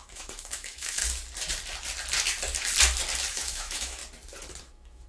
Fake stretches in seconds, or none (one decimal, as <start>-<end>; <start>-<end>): 0.0-1.0; 3.3-4.0; 4.6-5.1

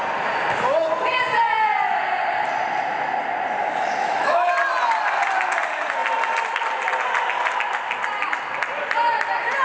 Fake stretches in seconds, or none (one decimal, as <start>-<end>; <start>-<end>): 3.6-4.5

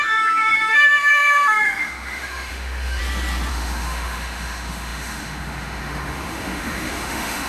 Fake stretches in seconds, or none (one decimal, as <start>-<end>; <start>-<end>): 0.0-3.0; 3.5-7.5

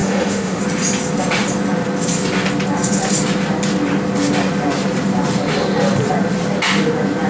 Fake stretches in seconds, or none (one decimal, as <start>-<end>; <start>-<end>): 0.0-0.6

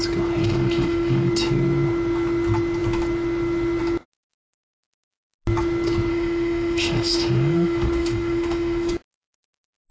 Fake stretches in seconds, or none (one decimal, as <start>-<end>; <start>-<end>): 0.4-1.3; 6.1-8.9